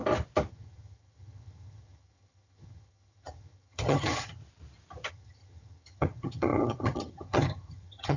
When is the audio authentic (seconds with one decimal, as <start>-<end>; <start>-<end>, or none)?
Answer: 0.0-0.5; 4.4-5.1

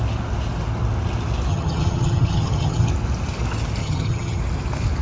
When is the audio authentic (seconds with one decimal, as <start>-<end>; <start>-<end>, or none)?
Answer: 0.0-1.5; 2.9-3.8; 4.4-5.0

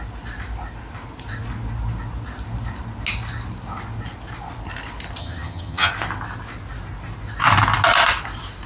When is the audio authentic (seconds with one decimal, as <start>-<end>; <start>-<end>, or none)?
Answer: 0.0-5.2; 5.9-8.7

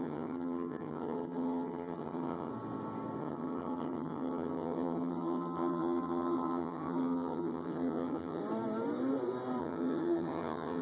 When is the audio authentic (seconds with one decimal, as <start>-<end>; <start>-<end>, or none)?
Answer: 2.5-3.2; 8.4-9.6

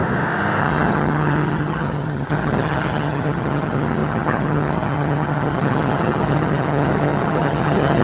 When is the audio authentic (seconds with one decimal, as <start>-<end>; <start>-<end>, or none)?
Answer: 0.0-0.6